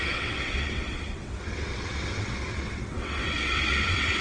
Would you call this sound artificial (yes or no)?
yes